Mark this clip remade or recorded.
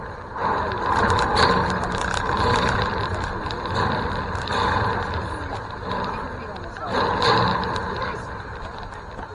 recorded